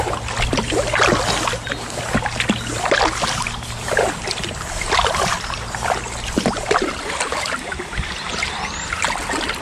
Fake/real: real